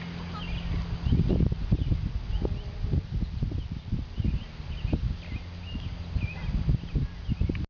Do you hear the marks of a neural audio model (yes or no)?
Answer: no